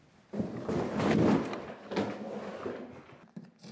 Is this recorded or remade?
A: recorded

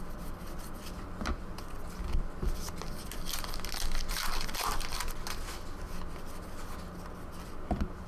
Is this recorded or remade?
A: recorded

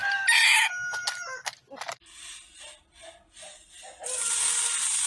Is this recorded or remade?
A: recorded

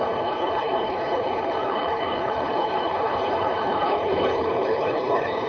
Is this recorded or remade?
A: remade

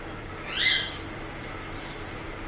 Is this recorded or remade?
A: recorded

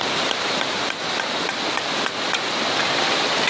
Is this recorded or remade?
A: recorded